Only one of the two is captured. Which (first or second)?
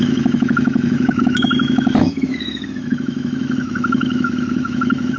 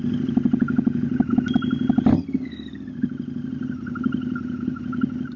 second